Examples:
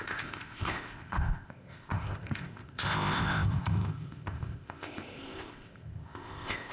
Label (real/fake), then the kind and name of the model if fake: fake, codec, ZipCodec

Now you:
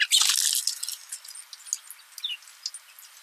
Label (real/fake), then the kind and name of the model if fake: real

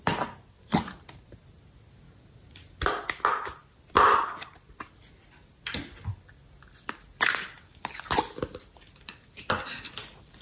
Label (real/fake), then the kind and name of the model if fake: real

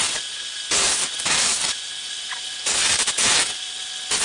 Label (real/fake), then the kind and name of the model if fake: fake, vocoder, BigVGAN v2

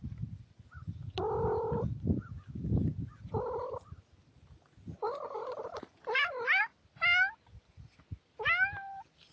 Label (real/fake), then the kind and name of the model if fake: real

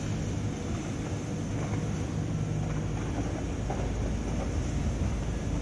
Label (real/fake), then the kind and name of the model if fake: real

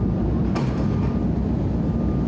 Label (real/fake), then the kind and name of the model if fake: real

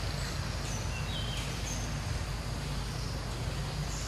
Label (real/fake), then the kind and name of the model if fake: real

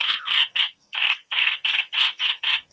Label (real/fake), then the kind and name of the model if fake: fake, codec, SNAC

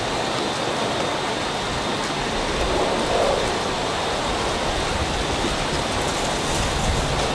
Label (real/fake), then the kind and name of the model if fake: real